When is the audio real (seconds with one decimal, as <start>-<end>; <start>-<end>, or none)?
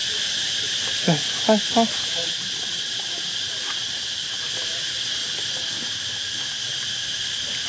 1.2-2.2; 3.6-7.7